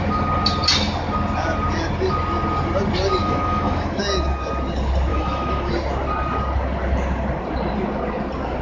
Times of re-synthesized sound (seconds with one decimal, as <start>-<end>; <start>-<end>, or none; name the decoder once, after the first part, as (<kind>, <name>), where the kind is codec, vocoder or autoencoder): 3.2-4.0 (autoencoder, DAC-VAE); 5.1-5.7